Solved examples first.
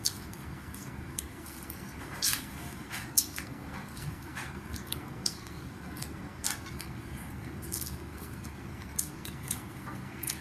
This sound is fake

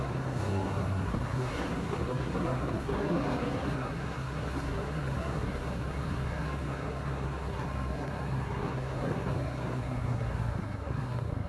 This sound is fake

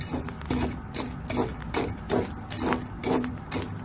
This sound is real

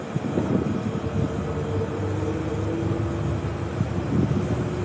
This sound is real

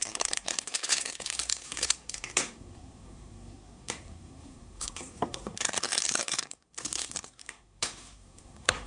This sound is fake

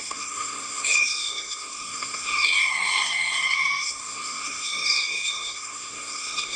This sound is fake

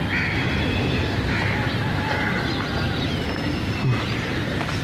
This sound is real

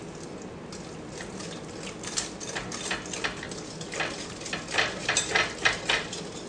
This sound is real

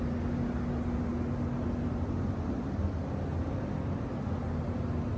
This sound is real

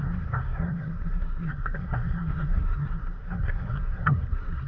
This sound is fake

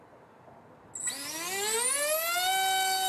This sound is real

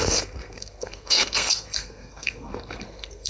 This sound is fake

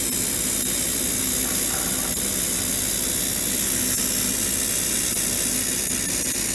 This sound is real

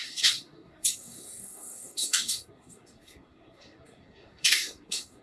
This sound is fake